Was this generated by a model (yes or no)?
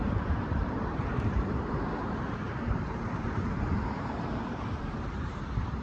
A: yes